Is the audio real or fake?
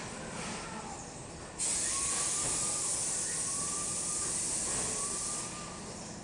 real